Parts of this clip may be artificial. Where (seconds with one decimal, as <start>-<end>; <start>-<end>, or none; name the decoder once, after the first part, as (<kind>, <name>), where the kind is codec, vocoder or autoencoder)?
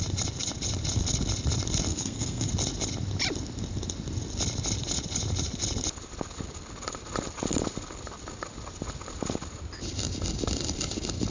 1.9-2.5 (codec, SNAC)